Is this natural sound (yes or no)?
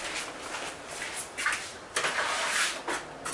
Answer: yes